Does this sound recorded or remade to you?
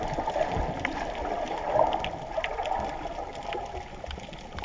recorded